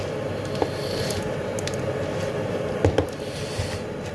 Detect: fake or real real